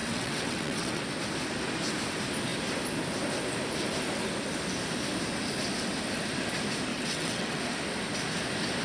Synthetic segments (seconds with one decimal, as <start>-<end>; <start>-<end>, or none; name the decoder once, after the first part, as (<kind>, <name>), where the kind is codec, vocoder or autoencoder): 0.0-1.0 (vocoder, WaveNeXt); 6.9-7.6